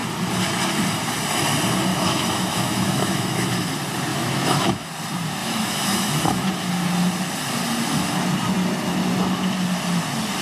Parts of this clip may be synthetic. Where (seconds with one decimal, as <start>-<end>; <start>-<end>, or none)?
1.9-3.5; 4.1-4.9; 5.4-6.5